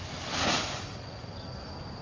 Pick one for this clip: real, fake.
real